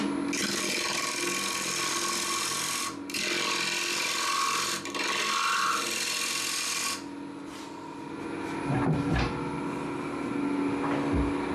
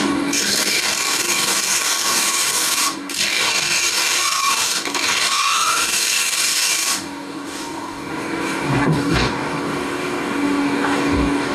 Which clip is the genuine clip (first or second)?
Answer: first